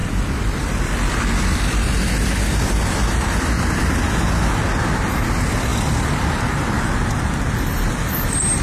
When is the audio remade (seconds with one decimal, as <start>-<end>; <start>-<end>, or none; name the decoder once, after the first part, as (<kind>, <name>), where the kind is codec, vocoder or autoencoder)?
0.0-4.0 (vocoder, BigVGAN v2)